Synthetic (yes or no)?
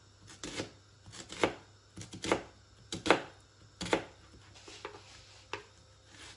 no